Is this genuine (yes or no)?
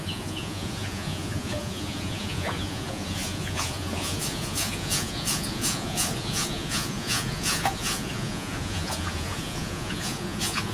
no